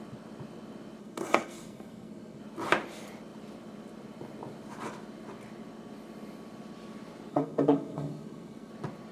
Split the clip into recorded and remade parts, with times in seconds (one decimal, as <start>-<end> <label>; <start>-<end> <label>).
0.0-1.0 recorded; 1.0-2.4 remade; 2.4-7.3 recorded; 7.3-8.7 remade; 8.7-9.1 recorded